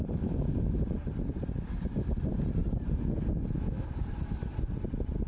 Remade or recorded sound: recorded